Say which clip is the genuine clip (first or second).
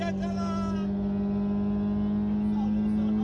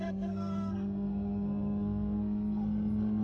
first